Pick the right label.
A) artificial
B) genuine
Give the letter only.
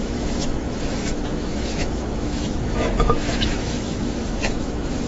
A